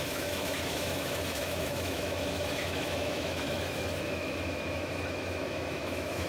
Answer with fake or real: fake